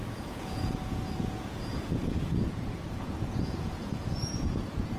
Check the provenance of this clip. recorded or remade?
remade